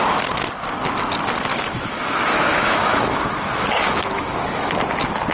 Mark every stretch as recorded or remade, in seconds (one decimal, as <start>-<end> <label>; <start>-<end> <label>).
0.0-1.5 recorded; 1.5-4.7 remade; 4.7-5.3 recorded